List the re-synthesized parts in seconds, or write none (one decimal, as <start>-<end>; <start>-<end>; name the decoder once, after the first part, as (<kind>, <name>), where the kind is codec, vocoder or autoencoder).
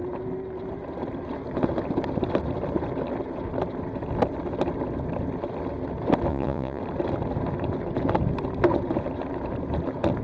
6.3-6.8 (vocoder, Vocos)